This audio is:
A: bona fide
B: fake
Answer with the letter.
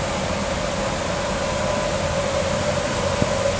A